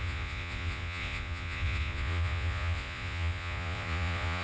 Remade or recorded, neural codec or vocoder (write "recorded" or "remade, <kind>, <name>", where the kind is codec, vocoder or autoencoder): remade, vocoder, Vocos